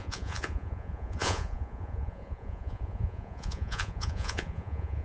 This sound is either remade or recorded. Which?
remade